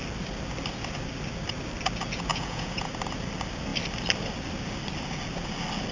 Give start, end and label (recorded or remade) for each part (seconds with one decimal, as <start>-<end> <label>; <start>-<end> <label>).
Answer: 0.0-2.3 recorded; 2.3-2.9 remade; 2.9-5.9 recorded